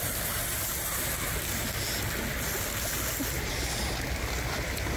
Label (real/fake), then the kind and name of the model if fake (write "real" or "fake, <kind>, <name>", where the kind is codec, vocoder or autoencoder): real